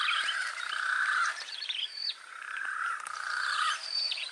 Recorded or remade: remade